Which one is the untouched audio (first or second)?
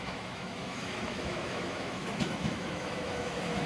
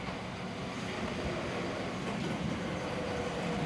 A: second